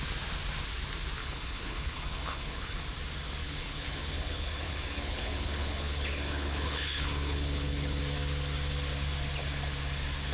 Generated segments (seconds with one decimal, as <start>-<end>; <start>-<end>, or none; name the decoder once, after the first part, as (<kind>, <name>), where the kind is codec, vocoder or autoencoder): 1.2-2.8 (codec, HILCodec); 3.4-8.0